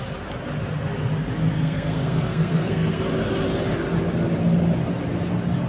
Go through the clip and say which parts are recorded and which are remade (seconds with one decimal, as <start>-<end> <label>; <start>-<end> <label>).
0.0-1.5 recorded; 1.5-3.0 remade; 3.0-5.7 recorded